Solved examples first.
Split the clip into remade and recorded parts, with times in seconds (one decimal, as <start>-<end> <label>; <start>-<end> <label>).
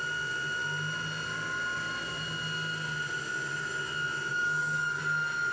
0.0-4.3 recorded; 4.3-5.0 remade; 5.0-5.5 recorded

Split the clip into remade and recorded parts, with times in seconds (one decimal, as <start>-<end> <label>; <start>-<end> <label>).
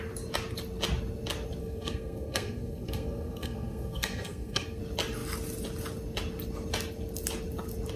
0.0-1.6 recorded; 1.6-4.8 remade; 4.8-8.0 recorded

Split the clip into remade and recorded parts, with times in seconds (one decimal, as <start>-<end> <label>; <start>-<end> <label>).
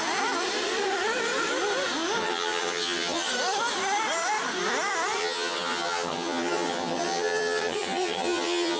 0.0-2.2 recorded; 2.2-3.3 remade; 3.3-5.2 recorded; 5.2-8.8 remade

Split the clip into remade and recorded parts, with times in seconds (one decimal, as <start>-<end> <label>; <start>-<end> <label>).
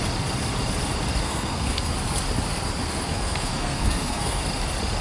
0.0-1.2 recorded; 1.2-1.9 remade; 1.9-3.1 recorded; 3.1-4.4 remade; 4.4-5.0 recorded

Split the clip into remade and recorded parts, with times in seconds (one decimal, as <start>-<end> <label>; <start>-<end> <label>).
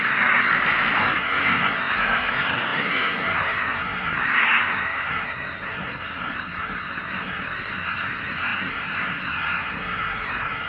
0.0-0.5 remade; 0.5-1.0 recorded; 1.0-10.7 remade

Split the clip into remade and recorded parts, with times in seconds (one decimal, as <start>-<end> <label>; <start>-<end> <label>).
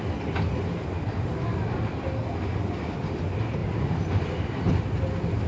0.0-5.5 recorded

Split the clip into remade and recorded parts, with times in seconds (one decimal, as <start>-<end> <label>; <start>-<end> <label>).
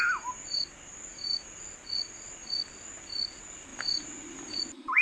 0.0-5.0 recorded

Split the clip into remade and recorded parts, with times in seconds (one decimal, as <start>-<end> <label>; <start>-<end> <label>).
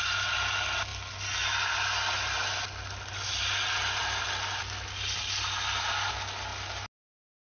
0.0-7.5 recorded